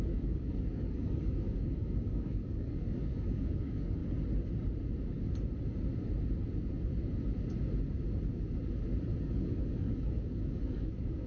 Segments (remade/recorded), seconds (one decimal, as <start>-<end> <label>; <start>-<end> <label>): 0.0-4.0 remade; 4.0-9.2 recorded; 9.2-11.3 remade